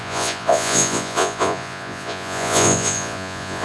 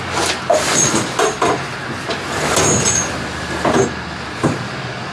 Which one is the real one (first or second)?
second